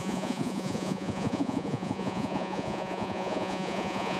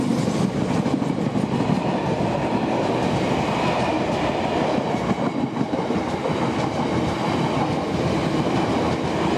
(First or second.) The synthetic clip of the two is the first